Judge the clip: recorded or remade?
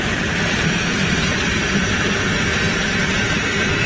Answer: remade